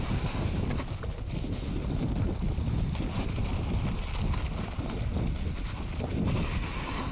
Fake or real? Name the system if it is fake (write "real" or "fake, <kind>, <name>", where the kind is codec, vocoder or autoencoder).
real